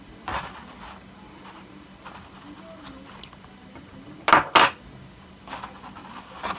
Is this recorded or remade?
recorded